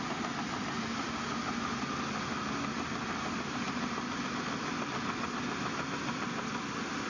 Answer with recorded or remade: recorded